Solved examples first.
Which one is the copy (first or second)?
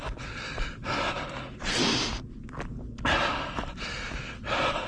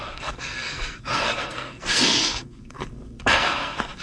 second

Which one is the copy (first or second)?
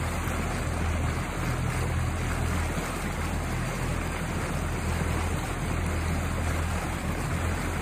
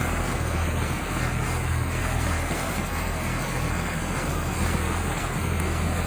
second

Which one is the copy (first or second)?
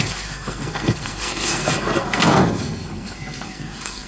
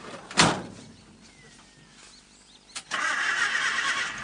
first